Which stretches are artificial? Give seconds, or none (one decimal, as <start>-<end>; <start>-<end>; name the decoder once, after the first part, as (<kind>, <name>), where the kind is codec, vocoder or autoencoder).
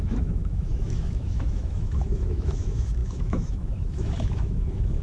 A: 0.0-5.0 (autoencoder, DAC-VAE)